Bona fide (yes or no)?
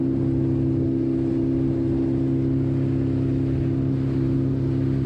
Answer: yes